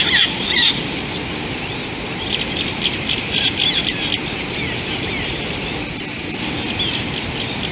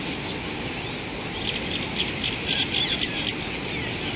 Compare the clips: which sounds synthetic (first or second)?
first